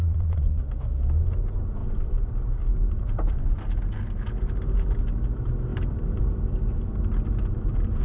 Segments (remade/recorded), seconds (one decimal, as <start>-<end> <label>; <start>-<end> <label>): 0.0-0.6 remade; 0.6-8.0 recorded